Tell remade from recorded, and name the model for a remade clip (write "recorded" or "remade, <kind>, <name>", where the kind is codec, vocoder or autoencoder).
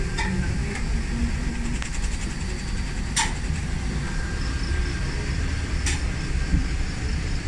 recorded